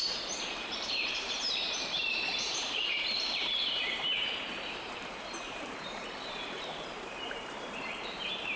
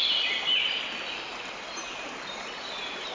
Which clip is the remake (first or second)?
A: first